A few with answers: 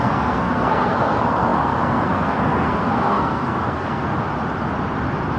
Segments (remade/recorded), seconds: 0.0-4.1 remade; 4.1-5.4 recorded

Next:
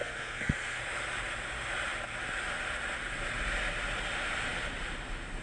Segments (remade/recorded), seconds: 0.0-0.8 remade; 0.8-5.4 recorded

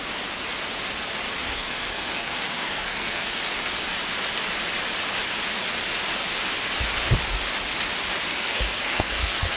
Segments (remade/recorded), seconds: 0.0-1.4 recorded; 1.4-3.4 remade; 3.4-8.3 recorded; 8.3-9.6 remade